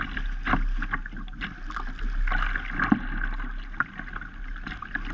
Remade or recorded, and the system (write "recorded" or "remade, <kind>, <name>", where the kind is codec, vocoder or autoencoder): recorded